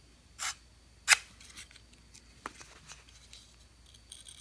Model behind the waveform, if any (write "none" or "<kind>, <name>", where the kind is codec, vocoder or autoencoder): none